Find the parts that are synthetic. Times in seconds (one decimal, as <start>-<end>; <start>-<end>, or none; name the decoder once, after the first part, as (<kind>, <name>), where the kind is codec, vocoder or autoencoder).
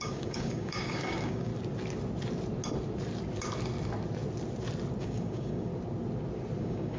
0.0-1.5 (codec, DAC); 5.0-5.7; 6.6-7.0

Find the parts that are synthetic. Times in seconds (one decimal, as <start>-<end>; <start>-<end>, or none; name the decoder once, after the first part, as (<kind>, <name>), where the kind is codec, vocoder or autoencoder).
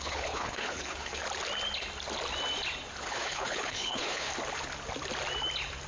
0.0-1.2 (codec, HILCodec); 3.0-4.3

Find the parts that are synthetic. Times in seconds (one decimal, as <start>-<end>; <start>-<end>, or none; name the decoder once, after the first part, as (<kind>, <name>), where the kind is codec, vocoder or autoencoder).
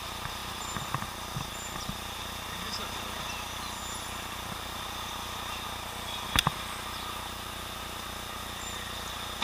none